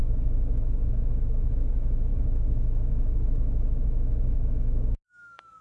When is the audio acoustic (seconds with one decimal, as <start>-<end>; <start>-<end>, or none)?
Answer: 1.5-2.1